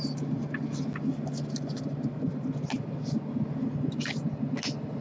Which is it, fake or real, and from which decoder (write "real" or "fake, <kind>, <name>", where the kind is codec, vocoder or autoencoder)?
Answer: real